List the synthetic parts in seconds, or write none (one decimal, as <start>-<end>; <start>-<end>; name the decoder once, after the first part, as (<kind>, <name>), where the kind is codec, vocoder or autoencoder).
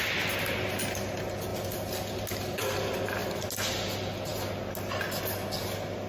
none